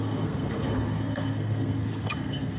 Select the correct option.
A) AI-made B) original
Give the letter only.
A